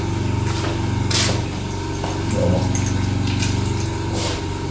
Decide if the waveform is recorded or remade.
recorded